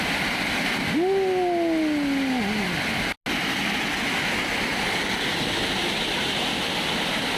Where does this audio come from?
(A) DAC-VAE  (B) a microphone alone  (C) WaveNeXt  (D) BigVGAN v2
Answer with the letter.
B